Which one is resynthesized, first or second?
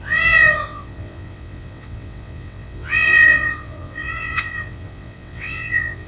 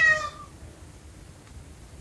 first